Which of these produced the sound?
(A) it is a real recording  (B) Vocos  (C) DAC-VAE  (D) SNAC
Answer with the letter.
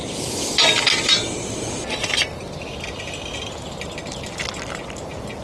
A